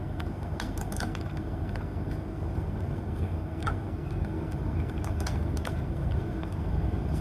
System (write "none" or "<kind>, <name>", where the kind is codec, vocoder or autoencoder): codec, SNAC